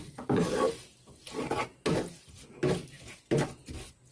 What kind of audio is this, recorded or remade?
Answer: recorded